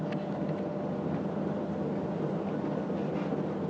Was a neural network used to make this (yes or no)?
no